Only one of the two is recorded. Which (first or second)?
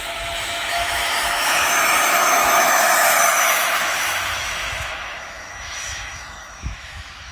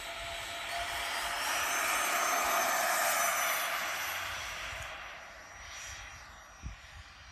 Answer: second